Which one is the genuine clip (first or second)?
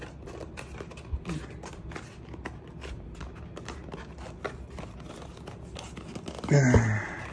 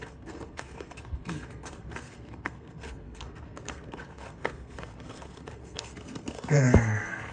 first